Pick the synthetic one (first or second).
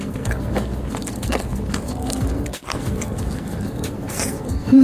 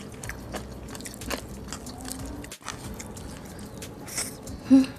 first